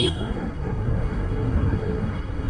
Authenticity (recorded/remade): remade